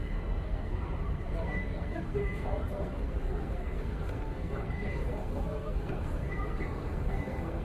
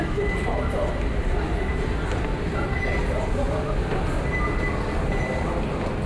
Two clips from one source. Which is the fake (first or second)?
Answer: first